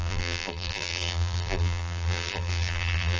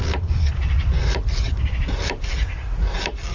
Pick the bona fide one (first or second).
second